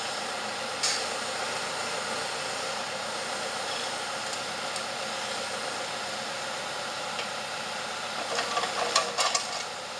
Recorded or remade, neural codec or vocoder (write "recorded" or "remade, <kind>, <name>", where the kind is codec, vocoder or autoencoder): recorded